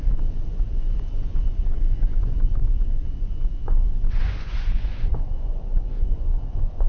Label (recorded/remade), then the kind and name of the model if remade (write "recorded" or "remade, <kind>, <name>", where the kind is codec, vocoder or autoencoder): remade, vocoder, Vocos